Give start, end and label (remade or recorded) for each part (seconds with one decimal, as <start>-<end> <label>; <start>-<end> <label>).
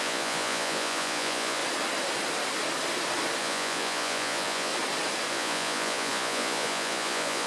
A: 0.0-1.6 remade; 1.6-3.4 recorded; 3.4-4.7 remade; 4.7-5.3 recorded; 5.3-7.5 remade